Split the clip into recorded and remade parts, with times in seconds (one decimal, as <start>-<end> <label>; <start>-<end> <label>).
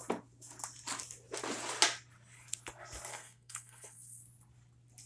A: 0.0-3.1 recorded; 3.1-4.2 remade; 4.2-5.1 recorded